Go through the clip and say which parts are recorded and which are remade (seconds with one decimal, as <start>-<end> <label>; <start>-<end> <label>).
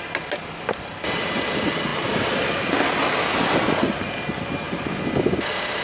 0.0-5.8 recorded